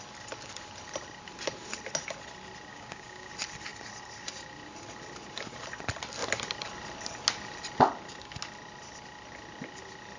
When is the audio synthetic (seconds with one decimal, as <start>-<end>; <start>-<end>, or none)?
2.7-3.3